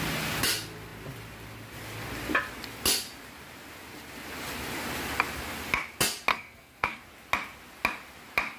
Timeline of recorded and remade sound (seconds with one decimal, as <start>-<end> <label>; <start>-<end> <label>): 0.0-6.3 recorded; 6.3-7.0 remade; 7.0-8.6 recorded